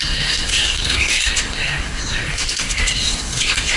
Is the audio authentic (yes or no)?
no